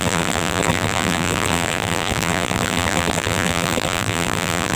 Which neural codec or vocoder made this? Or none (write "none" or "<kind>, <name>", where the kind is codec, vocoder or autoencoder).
vocoder, BigVGAN v2